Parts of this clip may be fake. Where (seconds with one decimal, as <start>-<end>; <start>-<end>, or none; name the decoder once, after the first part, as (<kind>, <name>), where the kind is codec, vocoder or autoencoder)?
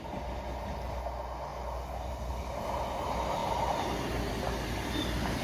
none